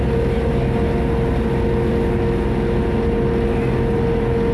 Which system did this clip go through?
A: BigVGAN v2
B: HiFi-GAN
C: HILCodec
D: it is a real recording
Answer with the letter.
D